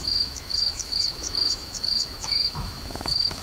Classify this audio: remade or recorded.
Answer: remade